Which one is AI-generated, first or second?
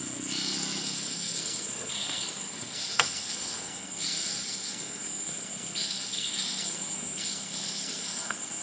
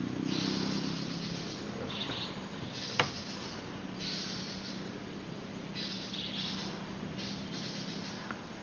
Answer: first